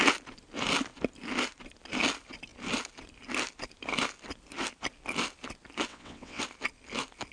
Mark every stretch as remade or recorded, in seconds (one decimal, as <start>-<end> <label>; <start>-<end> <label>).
0.0-5.9 recorded; 5.9-6.4 remade; 6.4-7.3 recorded